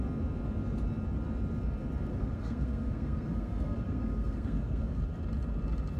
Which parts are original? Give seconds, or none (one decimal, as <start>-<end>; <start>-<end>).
0.0-2.1; 5.0-6.0